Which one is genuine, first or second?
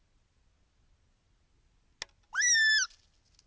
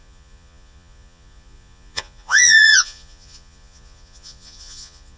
first